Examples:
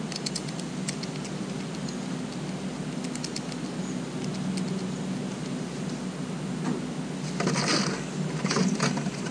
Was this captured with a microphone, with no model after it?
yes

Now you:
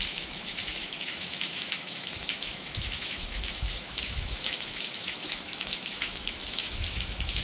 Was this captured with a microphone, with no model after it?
no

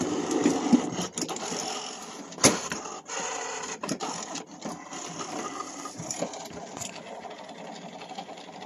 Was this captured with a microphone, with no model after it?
yes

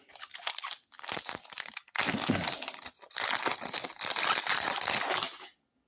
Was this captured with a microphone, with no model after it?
yes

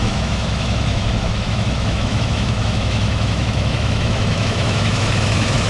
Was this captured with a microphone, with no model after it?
no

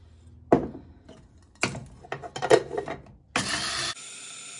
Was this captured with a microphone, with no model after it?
yes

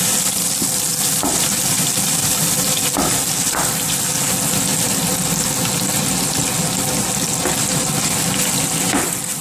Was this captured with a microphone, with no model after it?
yes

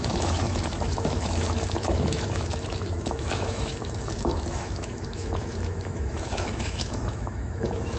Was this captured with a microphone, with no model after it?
no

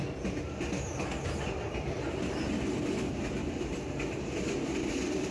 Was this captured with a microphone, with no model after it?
yes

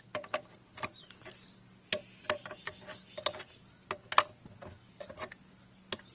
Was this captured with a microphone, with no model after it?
yes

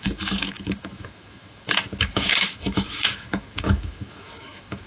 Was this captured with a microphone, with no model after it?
no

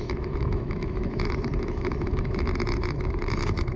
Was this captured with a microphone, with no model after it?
no